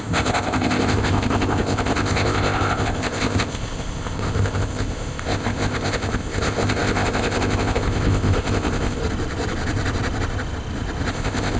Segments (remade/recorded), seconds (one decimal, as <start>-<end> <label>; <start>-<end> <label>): 0.0-9.0 remade; 9.0-11.1 recorded; 11.1-11.6 remade